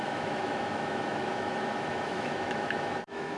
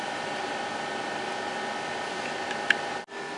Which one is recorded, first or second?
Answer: second